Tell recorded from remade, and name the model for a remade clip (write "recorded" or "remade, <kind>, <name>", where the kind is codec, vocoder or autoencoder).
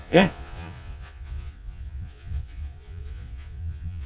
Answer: remade, vocoder, Vocos